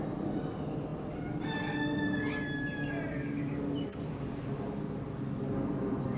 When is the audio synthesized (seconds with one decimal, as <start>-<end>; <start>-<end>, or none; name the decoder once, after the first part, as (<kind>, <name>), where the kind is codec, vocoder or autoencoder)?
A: none